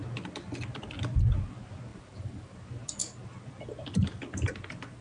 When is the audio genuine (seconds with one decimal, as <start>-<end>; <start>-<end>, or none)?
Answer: 0.0-1.9; 2.6-5.0